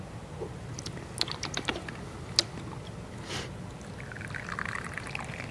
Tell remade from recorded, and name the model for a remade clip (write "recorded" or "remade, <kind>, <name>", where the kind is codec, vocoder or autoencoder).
recorded